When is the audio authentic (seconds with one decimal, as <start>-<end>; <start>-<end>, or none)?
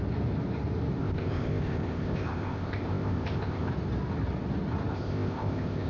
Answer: 0.0-1.0; 3.7-4.9